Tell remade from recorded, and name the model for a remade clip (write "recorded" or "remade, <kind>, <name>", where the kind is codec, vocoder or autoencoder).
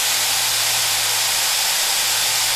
recorded